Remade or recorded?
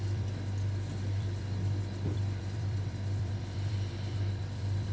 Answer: remade